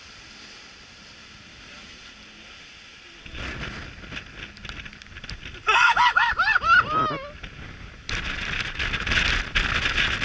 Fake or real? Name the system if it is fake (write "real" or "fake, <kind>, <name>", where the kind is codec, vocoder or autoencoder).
real